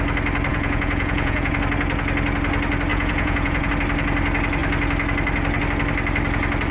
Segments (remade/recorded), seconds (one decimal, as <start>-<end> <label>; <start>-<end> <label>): 0.0-0.5 recorded; 0.5-1.6 remade; 1.6-2.9 recorded; 2.9-3.7 remade; 3.7-6.7 recorded